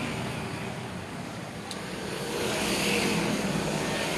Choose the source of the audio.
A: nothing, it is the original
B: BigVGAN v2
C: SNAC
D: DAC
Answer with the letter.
D